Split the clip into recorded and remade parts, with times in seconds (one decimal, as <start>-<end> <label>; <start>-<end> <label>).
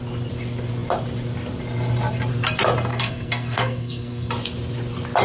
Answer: 0.0-2.9 recorded; 2.9-4.3 remade; 4.3-5.2 recorded